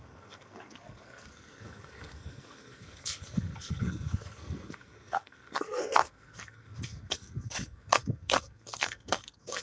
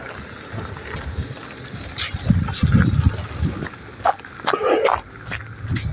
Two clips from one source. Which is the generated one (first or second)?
first